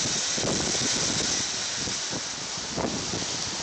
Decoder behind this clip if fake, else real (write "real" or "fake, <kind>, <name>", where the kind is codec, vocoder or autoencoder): real